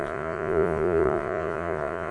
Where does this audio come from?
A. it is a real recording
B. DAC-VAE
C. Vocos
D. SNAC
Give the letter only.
C